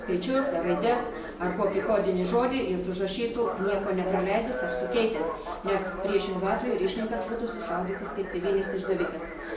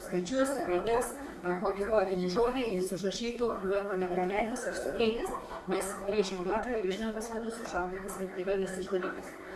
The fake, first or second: second